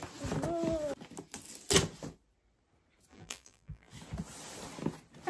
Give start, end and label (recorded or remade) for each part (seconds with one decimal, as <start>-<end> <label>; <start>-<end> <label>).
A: 0.0-3.1 recorded; 3.1-3.9 remade; 3.9-5.3 recorded